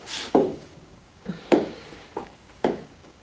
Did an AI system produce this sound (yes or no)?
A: yes